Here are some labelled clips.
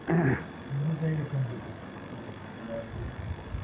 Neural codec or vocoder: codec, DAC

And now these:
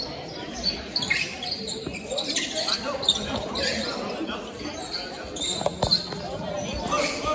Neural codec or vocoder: vocoder, BigVGAN v2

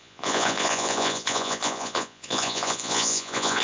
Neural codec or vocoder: vocoder, Vocos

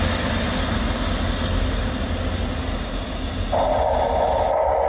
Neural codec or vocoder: none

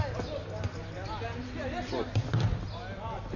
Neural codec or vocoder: none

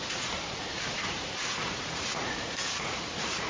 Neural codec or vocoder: vocoder, Vocos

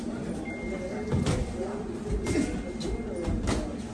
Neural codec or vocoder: none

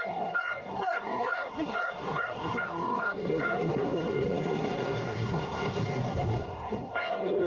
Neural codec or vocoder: codec, SNAC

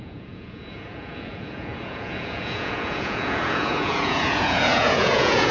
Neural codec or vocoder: vocoder, Vocos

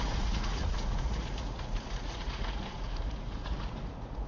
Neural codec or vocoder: vocoder, Vocos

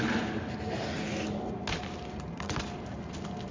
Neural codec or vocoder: none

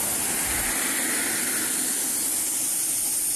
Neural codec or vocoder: none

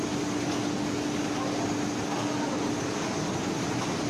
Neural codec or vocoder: none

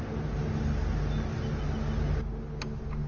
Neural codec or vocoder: none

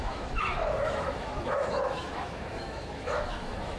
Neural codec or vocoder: autoencoder, DAC-VAE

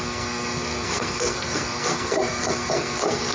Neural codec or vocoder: codec, SNAC